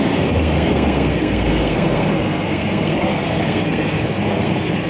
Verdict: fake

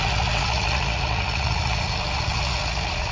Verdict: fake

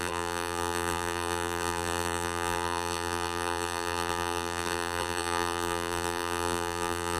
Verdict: fake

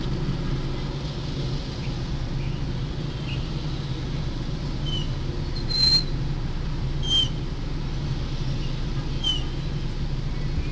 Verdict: real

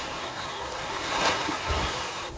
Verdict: fake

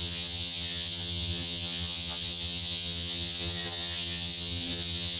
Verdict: fake